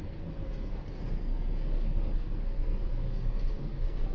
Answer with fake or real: fake